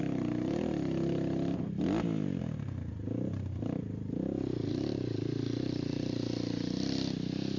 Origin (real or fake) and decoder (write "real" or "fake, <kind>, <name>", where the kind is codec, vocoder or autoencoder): real